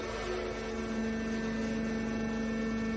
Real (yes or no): yes